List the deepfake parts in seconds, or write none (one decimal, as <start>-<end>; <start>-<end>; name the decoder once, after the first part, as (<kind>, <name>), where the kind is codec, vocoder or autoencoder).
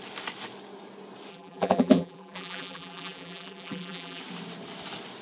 1.3-4.2 (vocoder, BigVGAN v2)